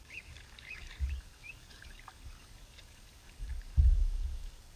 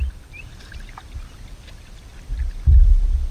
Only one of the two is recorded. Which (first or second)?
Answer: second